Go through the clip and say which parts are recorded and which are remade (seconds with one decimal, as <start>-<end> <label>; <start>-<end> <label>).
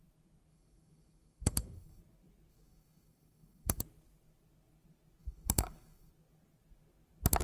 0.0-0.5 recorded; 0.5-2.0 remade; 2.0-2.5 recorded; 2.5-3.8 remade; 3.8-5.2 recorded; 5.2-6.1 remade; 6.1-7.4 recorded